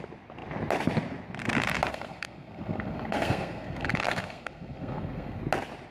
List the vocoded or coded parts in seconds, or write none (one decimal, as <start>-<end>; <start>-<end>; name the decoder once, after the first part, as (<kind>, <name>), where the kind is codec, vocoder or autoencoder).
1.9-5.4 (codec, SNAC)